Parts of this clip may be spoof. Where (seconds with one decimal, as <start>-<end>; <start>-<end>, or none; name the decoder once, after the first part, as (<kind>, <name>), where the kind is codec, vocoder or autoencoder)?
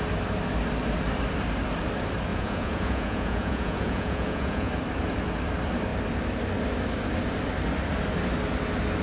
2.3-4.7 (vocoder, Vocos)